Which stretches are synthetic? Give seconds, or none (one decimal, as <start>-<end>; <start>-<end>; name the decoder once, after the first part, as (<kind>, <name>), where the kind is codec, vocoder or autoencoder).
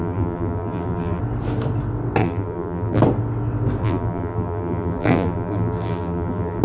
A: 0.0-1.2 (vocoder, BigVGAN v2); 2.2-3.0; 3.8-6.6